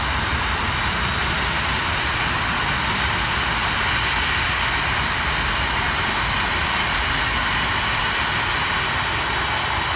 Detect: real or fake real